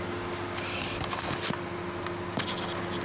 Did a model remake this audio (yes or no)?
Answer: no